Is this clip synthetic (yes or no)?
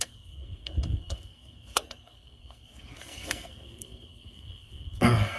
yes